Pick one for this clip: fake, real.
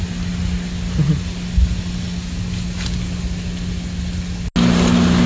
real